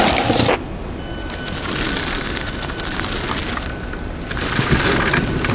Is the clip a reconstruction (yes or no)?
no